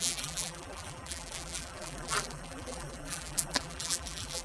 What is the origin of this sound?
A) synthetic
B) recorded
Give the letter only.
A